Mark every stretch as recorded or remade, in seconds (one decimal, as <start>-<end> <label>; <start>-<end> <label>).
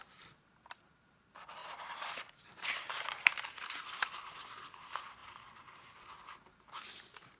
0.0-1.2 remade; 1.2-1.6 recorded; 1.6-3.8 remade; 3.8-5.2 recorded; 5.2-7.4 remade